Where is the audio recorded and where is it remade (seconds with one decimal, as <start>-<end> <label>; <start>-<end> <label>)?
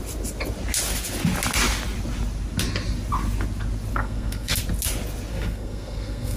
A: 0.0-3.9 recorded; 3.9-4.6 remade; 4.6-5.3 recorded; 5.3-6.4 remade